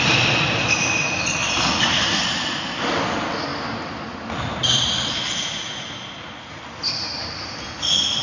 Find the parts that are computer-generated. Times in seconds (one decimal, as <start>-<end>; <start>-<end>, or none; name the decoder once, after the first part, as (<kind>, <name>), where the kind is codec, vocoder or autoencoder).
none